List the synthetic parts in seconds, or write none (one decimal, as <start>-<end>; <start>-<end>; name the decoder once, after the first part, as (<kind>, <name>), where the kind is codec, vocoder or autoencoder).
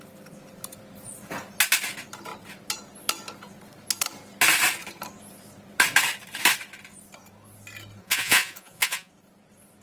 8.0-9.1 (vocoder, Vocos)